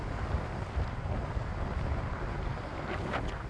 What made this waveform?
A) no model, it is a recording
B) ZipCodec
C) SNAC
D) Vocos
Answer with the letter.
A